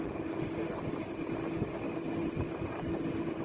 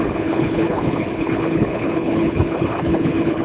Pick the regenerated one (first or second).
second